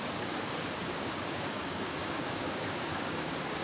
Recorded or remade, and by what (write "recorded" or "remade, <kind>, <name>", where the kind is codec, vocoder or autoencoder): remade, codec, DAC